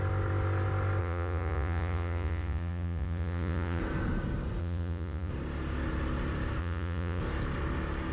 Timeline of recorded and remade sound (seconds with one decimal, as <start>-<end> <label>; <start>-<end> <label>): 0.0-1.0 recorded; 1.0-3.8 remade; 3.8-4.6 recorded; 4.6-5.3 remade; 5.3-6.6 recorded; 6.6-7.2 remade; 7.2-8.1 recorded